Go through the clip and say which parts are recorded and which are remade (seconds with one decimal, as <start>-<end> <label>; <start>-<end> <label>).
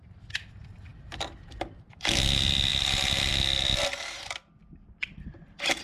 0.0-5.8 recorded